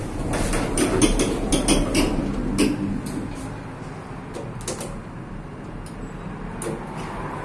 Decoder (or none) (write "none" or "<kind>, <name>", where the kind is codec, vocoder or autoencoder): none